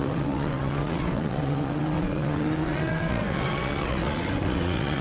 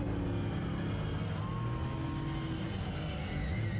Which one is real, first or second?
second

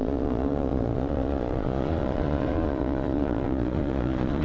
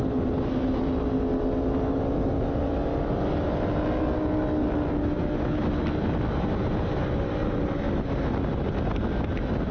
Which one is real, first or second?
second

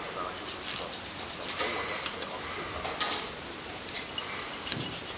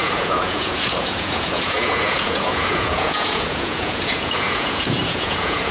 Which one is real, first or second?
first